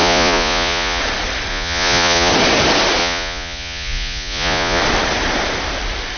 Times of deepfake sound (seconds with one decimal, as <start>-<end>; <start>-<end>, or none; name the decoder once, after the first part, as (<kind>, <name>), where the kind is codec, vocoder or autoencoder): 0.0-1.0 (vocoder, Vocos); 1.5-2.3; 3.0-4.8